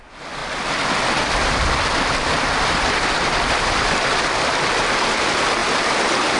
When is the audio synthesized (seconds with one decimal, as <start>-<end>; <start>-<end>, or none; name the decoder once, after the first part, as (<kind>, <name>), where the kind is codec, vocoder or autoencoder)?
0.4-4.2 (vocoder, BigVGAN v2); 5.6-6.4